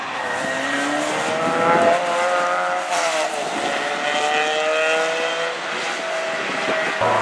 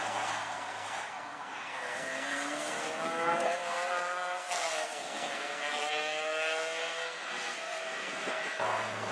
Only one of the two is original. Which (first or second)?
first